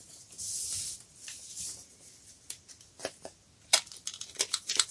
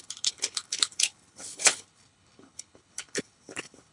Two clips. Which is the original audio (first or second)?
first